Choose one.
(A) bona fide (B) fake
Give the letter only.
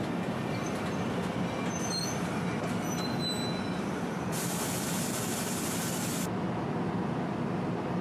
A